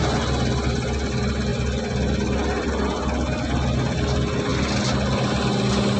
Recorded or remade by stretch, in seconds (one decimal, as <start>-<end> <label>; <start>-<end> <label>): 0.0-6.0 recorded